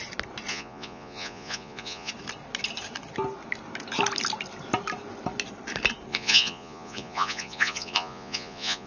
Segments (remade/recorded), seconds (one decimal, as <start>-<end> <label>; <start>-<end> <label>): 0.0-0.5 recorded; 0.5-2.1 remade; 2.1-6.1 recorded; 6.1-8.9 remade